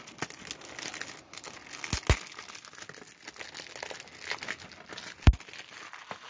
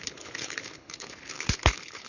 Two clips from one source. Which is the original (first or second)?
first